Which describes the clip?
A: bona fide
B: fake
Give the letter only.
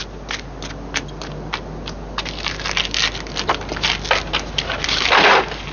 A